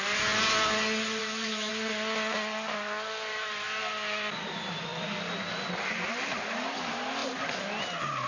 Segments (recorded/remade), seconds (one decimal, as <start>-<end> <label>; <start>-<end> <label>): 0.0-1.2 recorded; 1.2-1.7 remade; 1.7-3.3 recorded; 3.3-3.8 remade; 3.8-8.3 recorded